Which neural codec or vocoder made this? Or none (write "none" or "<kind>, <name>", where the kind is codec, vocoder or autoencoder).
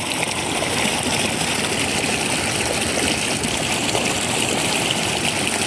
none